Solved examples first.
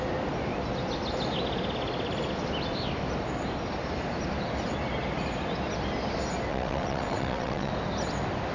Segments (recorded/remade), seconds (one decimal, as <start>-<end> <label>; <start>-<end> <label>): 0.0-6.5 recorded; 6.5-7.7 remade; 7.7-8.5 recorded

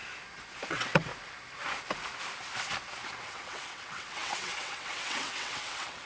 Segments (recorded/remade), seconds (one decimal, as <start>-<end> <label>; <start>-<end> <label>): 0.0-0.6 recorded; 0.6-1.1 remade; 1.1-3.2 recorded; 3.2-6.1 remade

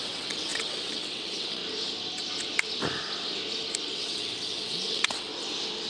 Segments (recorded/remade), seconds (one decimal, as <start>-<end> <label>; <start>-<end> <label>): 0.0-1.6 remade; 1.6-3.9 recorded; 3.9-5.3 remade; 5.3-5.9 recorded